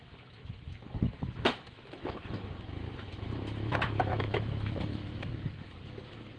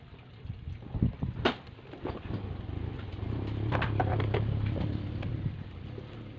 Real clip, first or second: second